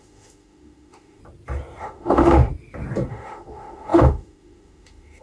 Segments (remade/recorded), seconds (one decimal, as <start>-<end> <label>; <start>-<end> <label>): 0.0-1.2 remade; 1.2-1.8 recorded; 1.8-2.5 remade; 2.5-3.1 recorded; 3.1-5.2 remade